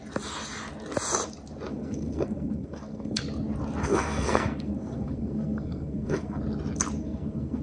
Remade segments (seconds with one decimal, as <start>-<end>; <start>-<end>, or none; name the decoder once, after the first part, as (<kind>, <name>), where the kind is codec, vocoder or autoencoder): 1.7-3.2 (codec, SNAC); 3.8-6.4; 7.0-7.6